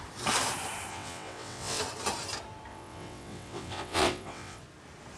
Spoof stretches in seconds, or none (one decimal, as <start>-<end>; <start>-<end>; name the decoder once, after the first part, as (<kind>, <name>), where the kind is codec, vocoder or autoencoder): 0.9-1.8 (vocoder, WaveNeXt); 2.7-4.6